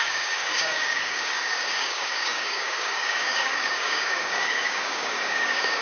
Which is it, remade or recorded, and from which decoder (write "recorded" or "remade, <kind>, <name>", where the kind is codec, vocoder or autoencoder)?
remade, codec, DAC